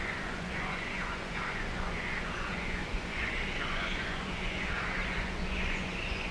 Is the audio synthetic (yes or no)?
yes